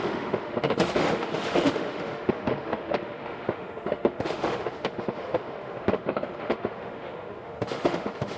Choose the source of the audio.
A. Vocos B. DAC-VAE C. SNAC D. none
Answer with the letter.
B